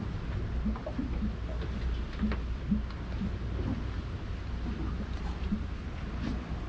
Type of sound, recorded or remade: recorded